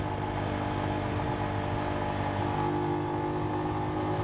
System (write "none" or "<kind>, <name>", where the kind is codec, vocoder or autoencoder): none